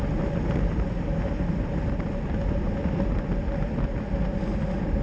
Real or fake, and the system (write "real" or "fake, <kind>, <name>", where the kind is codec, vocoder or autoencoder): real